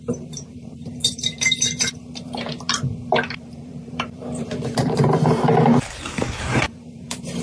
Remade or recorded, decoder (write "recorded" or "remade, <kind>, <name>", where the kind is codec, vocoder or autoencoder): remade, vocoder, BigVGAN v2